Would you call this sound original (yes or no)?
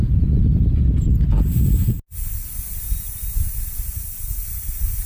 yes